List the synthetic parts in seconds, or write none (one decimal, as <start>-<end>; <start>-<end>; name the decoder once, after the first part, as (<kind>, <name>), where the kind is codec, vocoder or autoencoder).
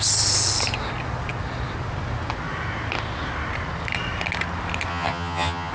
4.9-5.7 (vocoder, HiFi-GAN)